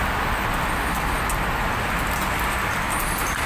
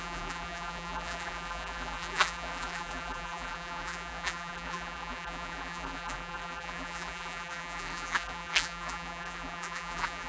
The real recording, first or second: first